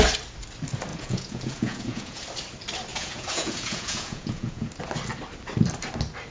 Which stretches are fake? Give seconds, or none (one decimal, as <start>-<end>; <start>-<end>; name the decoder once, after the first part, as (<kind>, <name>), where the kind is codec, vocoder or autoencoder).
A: 0.9-2.2 (vocoder, Vocos); 2.9-4.7